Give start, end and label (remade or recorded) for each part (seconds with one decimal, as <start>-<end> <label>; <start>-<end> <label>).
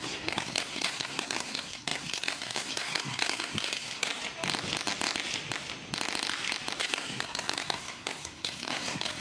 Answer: 0.0-4.1 remade; 4.1-6.8 recorded; 6.8-9.2 remade